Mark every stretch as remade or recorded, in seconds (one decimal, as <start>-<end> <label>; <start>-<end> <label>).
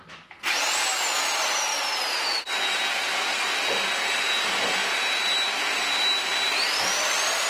0.0-7.5 recorded